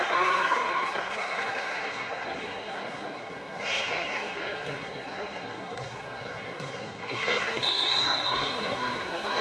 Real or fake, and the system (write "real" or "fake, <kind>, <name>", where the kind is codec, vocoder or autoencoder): fake, codec, SNAC